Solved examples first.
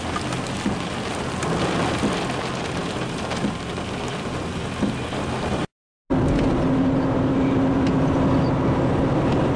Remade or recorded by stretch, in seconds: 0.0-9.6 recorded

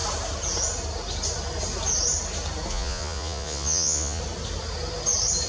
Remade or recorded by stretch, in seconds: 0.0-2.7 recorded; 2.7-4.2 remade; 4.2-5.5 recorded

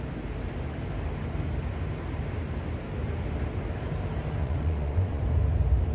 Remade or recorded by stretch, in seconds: 0.0-4.4 recorded; 4.4-5.2 remade; 5.2-5.9 recorded

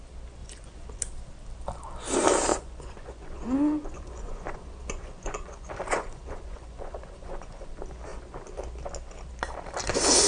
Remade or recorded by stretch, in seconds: 0.0-0.4 recorded; 0.4-1.0 remade; 1.0-2.5 recorded; 2.5-7.7 remade; 7.7-10.3 recorded

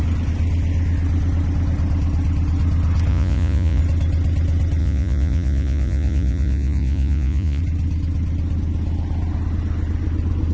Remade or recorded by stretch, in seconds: 0.0-3.1 recorded; 3.1-3.8 remade; 3.8-4.8 recorded; 4.8-7.6 remade; 7.6-10.5 recorded